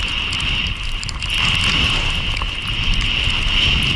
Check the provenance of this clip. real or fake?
fake